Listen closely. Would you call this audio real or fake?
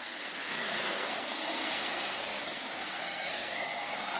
fake